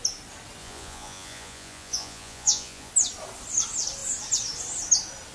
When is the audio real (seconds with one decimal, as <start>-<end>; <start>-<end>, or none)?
0.0-0.6; 2.9-5.3